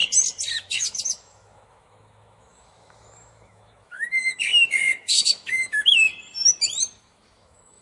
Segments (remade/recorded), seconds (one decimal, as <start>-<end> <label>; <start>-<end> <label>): 0.0-0.5 recorded; 0.5-6.1 remade; 6.1-7.0 recorded; 7.0-7.8 remade